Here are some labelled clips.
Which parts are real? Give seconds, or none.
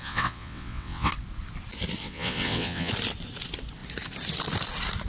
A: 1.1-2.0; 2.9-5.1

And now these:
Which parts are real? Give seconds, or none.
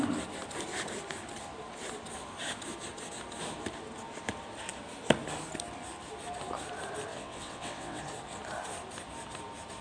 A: 0.0-7.1; 8.0-9.8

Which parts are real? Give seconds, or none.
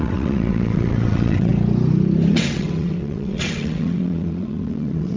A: 1.5-2.3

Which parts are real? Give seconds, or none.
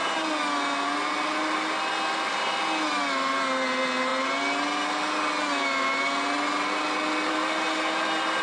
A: 0.0-8.4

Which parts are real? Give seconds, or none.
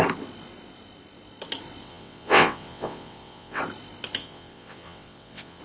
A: 0.0-1.8; 3.6-4.2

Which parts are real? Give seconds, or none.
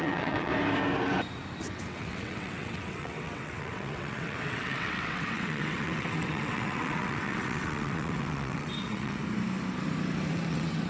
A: 0.5-1.6; 9.2-10.3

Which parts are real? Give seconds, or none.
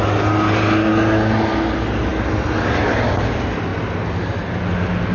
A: 0.0-5.1